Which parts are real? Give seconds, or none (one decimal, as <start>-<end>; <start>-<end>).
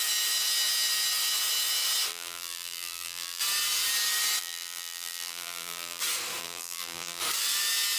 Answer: 0.0-2.1; 3.4-4.4; 6.0-6.4; 7.2-8.0